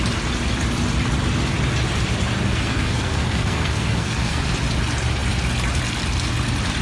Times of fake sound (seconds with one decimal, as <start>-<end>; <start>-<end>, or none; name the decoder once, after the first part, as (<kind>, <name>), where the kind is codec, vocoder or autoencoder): 2.5-4.4 (codec, SNAC)